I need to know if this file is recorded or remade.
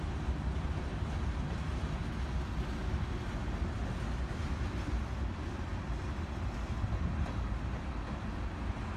recorded